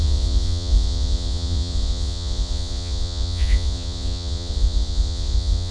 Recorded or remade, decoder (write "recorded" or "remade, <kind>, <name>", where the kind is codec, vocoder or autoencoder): remade, vocoder, Vocos